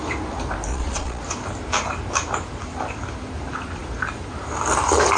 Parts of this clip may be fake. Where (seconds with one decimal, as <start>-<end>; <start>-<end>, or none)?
0.7-1.2